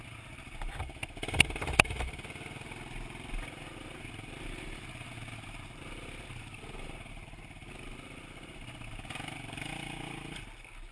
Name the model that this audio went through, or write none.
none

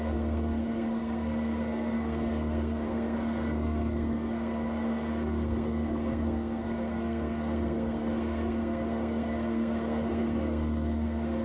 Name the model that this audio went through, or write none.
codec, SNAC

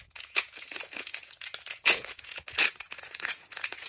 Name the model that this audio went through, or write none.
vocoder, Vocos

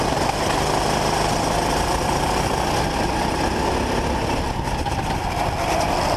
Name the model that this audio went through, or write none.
none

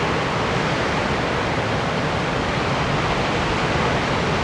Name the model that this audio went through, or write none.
none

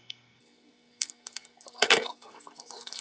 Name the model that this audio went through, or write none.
codec, SNAC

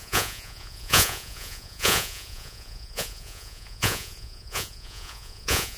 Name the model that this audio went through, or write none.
vocoder, Vocos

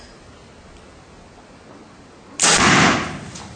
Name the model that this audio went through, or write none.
none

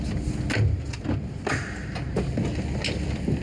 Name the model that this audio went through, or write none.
none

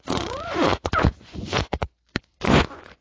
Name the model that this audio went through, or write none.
vocoder, Vocos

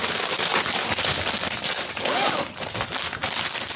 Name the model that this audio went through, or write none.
none